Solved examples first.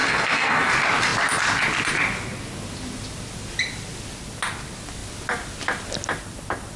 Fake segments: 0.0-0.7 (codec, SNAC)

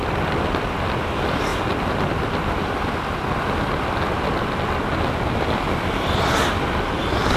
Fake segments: none